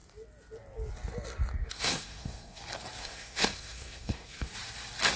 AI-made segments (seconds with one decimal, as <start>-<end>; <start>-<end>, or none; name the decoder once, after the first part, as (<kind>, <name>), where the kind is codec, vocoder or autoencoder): 1.6-2.6 (codec, SNAC); 3.0-4.5